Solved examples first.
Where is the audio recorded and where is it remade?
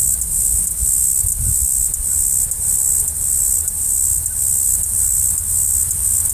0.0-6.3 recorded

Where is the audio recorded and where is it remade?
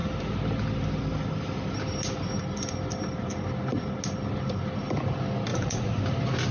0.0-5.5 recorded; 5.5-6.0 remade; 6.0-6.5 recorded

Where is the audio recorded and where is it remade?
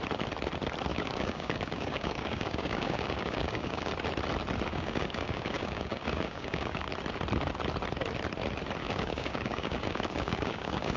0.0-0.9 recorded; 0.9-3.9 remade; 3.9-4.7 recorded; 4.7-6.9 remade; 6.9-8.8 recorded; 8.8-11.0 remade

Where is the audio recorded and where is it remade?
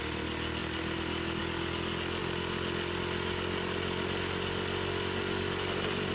0.0-6.1 recorded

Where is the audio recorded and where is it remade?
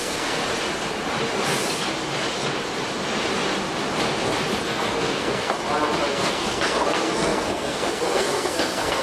0.0-0.4 remade; 0.4-4.6 recorded; 4.6-5.5 remade; 5.5-6.1 recorded; 6.1-9.0 remade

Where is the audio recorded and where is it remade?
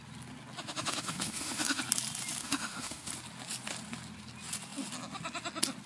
0.0-0.6 recorded; 0.6-1.8 remade; 1.8-2.4 recorded; 2.4-3.1 remade; 3.1-5.9 recorded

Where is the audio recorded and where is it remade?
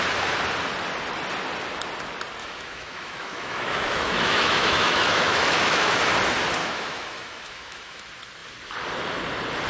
0.0-2.4 recorded; 2.4-6.0 remade; 6.0-6.6 recorded; 6.6-8.0 remade; 8.0-9.7 recorded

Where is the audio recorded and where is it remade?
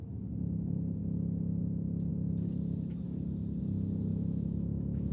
0.0-4.1 recorded; 4.1-5.1 remade